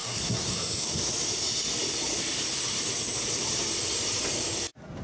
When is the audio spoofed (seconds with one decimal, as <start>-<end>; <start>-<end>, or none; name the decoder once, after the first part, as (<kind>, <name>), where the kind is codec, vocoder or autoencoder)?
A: 0.0-0.9 (codec, SNAC)